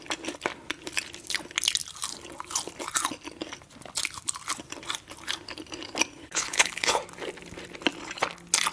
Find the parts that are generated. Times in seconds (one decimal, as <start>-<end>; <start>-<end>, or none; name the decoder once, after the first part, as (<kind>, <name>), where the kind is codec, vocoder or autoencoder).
6.2-7.0 (codec, HILCodec)